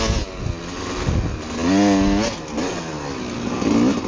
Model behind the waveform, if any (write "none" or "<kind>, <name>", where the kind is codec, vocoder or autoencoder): none